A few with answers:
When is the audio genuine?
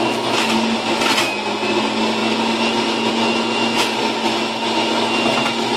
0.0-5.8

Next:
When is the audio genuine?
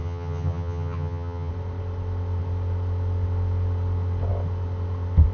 1.5-5.3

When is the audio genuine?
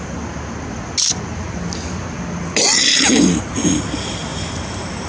0.0-4.3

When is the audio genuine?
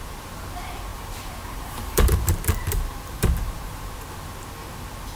0.0-0.9; 3.9-5.2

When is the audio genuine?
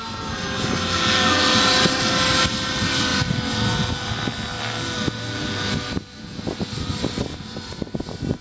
0.0-8.4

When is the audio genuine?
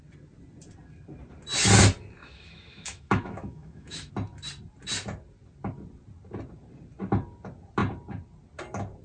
0.0-2.2; 4.1-9.0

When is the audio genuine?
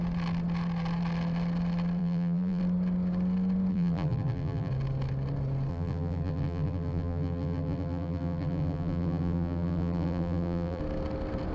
0.0-2.0; 2.6-3.7; 4.7-5.7; 10.8-11.5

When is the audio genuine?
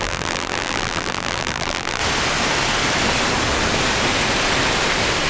2.0-5.3